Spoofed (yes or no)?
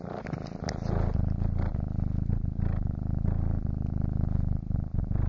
no